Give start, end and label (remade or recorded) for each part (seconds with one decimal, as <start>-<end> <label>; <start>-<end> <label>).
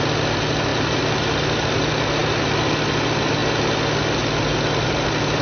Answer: 0.0-5.4 recorded